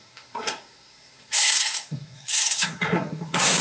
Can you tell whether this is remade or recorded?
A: remade